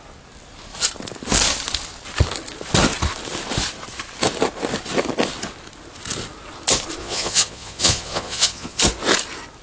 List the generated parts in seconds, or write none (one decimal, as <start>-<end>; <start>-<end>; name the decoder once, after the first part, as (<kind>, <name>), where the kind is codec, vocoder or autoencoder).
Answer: 7.0-8.8 (vocoder, Vocos)